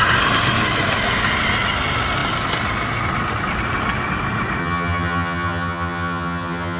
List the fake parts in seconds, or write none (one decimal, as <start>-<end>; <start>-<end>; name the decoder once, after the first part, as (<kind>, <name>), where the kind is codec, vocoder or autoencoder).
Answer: 4.6-6.8 (vocoder, HiFi-GAN)